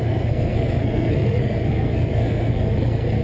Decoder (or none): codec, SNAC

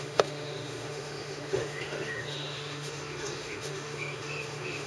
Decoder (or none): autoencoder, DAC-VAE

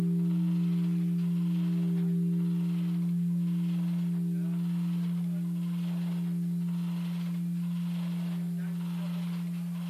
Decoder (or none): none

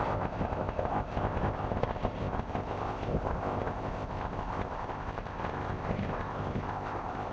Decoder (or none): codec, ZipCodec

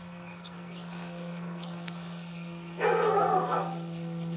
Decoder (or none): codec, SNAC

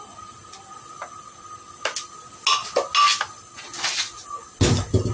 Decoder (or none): none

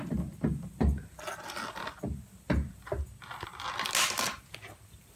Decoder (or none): none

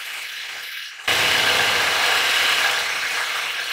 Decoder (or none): none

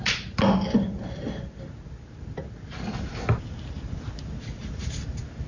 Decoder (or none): none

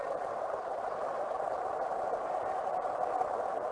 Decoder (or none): none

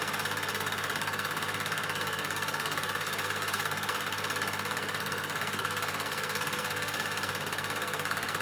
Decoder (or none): codec, SNAC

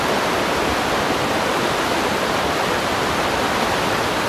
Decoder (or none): vocoder, BigVGAN v2